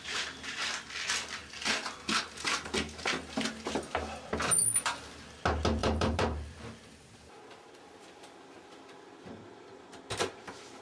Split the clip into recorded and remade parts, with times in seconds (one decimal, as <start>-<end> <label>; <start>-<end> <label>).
0.0-5.8 recorded; 5.8-7.4 remade; 7.4-10.8 recorded